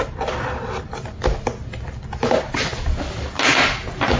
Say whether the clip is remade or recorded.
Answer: recorded